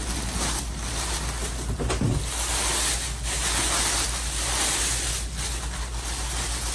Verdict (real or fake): real